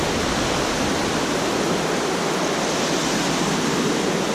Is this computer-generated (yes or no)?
no